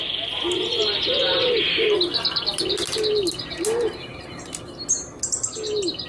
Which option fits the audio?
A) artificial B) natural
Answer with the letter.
B